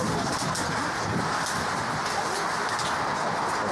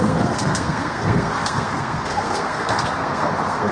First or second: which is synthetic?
second